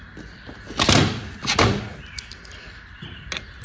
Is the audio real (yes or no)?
yes